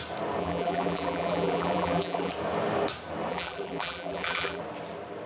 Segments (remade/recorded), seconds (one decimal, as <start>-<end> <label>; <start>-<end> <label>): 0.0-0.4 recorded; 0.4-2.3 remade; 2.3-3.3 recorded; 3.3-4.6 remade; 4.6-5.3 recorded